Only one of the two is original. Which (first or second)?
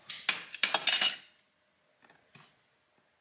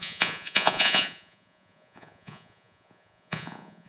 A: first